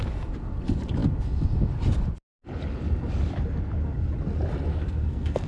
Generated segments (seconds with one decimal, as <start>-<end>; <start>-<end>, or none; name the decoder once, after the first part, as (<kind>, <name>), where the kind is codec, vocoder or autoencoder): 4.7-5.5 (codec, SNAC)